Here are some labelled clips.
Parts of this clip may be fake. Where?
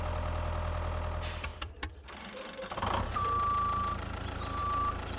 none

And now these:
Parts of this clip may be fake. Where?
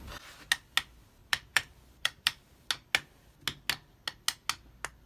1.2-2.7 (vocoder, BigVGAN v2)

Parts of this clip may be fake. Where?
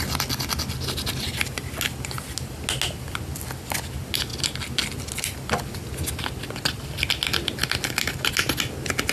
none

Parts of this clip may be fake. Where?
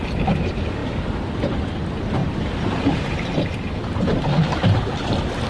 2.2-5.1 (vocoder, BigVGAN v2)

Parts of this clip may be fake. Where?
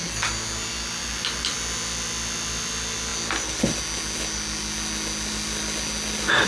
1.0-1.6 (vocoder, BigVGAN v2)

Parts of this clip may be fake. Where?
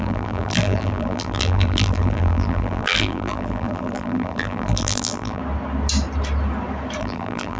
0.0-5.4 (vocoder, BigVGAN v2); 7.0-7.6